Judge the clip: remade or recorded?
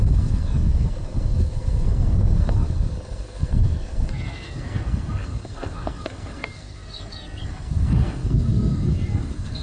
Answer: remade